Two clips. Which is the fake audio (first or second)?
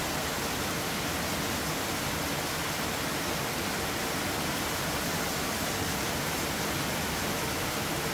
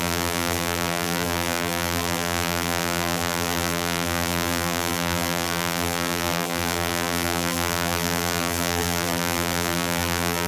second